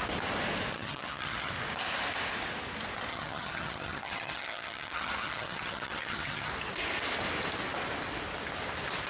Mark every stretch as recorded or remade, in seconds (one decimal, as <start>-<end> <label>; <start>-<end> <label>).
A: 0.0-0.7 recorded; 0.7-1.5 remade; 1.5-3.1 recorded; 3.1-6.5 remade; 6.5-9.1 recorded